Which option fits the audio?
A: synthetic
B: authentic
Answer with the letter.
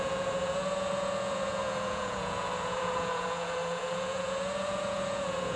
A